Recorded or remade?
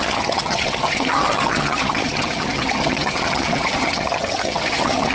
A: remade